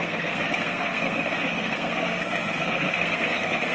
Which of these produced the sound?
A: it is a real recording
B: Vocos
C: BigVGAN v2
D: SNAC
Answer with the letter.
D